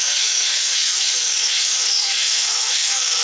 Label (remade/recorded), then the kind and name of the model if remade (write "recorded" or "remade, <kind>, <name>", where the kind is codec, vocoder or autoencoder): remade, codec, SNAC